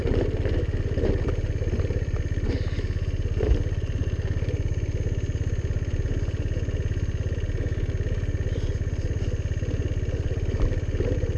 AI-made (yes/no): no